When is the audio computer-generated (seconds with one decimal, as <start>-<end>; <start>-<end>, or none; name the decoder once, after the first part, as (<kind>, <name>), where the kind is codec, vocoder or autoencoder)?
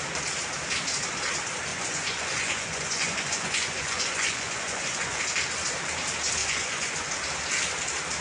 1.7-5.2 (vocoder, Vocos); 6.4-7.1